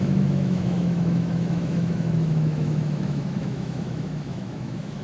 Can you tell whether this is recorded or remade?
remade